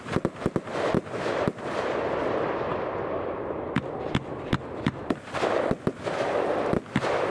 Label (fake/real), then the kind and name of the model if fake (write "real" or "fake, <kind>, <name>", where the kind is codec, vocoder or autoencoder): real